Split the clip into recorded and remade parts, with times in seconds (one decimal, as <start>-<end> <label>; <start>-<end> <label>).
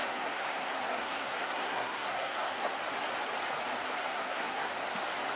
0.0-2.8 remade; 2.8-3.8 recorded; 3.8-4.7 remade; 4.7-5.4 recorded